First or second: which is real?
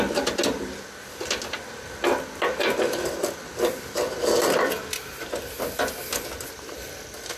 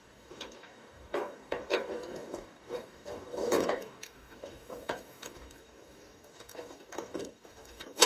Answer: first